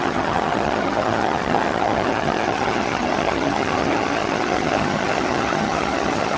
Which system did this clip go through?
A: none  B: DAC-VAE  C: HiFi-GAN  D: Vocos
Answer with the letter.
C